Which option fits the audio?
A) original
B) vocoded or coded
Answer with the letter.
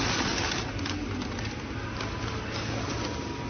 A